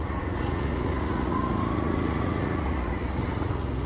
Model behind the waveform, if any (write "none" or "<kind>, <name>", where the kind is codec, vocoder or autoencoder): vocoder, Vocos